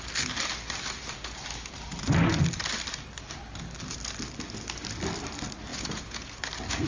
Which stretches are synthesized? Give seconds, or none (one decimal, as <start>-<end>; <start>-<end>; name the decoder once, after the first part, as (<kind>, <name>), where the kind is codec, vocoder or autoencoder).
5.7-6.3 (vocoder, Vocos)